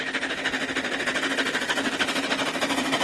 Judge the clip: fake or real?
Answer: real